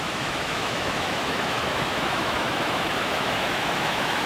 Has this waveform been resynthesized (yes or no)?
yes